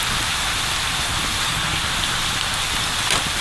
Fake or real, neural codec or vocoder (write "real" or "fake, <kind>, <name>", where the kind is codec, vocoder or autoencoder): real